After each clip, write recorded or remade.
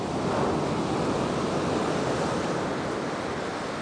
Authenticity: recorded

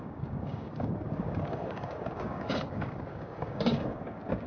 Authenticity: remade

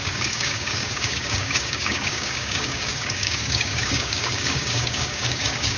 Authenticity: remade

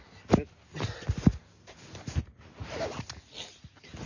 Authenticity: recorded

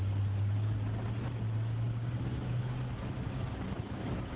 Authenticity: recorded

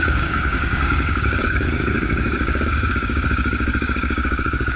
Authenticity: remade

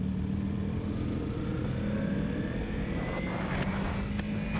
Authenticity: recorded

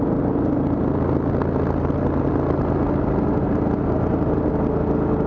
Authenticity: recorded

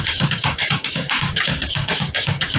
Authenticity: remade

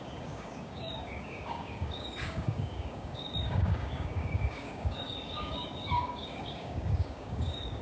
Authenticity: remade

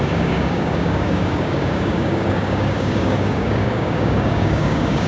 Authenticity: remade